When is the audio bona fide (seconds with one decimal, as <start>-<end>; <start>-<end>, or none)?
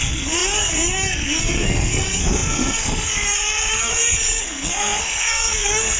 none